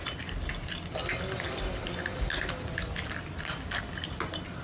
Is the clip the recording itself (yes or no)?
yes